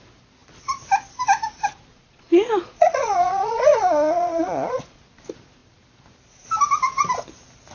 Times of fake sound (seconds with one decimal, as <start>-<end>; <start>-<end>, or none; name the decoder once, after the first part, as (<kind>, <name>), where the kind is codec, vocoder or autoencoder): 1.9-5.0 (vocoder, Vocos)